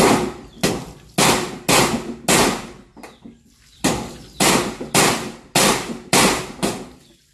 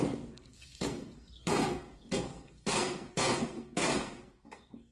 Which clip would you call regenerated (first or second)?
second